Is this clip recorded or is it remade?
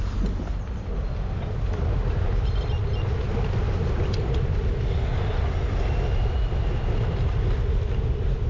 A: recorded